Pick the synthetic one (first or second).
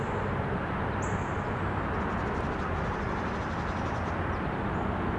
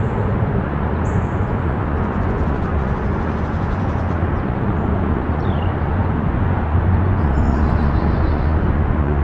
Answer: second